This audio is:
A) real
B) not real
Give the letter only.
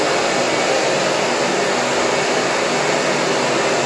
A